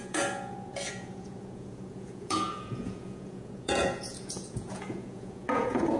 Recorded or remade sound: remade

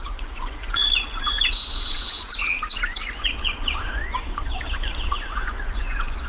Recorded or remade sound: remade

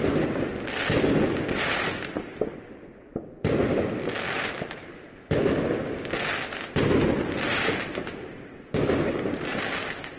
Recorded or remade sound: recorded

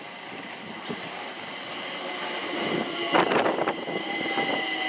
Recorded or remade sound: recorded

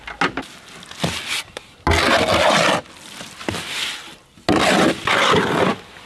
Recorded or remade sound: recorded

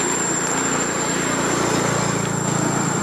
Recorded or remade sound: recorded